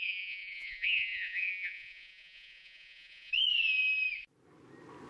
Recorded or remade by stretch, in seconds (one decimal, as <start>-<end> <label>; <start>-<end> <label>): 0.0-3.3 remade; 3.3-5.1 recorded